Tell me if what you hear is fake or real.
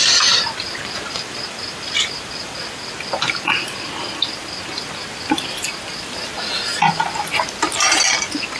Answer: real